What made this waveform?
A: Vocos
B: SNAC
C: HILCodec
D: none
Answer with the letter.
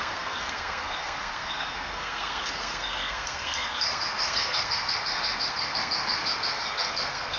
B